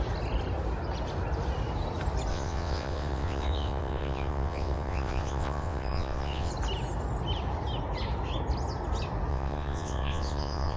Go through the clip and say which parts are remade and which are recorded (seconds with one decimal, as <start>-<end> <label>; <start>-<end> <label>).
0.0-2.3 recorded; 2.3-6.5 remade; 6.5-9.3 recorded; 9.3-10.8 remade